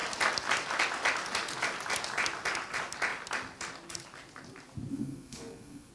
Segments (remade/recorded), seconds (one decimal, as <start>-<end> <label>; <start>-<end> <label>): 0.0-4.9 recorded; 4.9-5.9 remade